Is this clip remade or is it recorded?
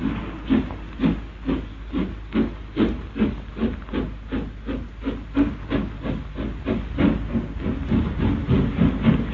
recorded